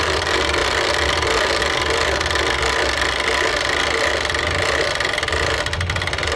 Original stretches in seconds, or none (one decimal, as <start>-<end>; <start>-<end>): 0.0-6.4